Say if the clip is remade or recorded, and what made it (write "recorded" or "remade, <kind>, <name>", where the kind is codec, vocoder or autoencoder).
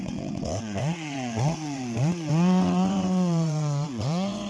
remade, vocoder, WaveNeXt